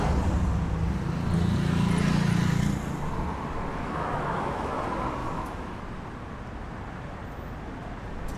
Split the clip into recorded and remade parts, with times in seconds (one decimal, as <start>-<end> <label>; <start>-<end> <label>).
0.0-3.7 recorded; 3.7-4.7 remade; 4.7-5.2 recorded; 5.2-5.8 remade; 5.8-8.4 recorded